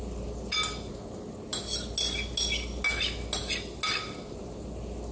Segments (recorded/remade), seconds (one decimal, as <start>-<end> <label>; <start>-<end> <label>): 0.0-5.1 recorded